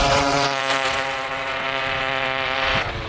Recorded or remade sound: remade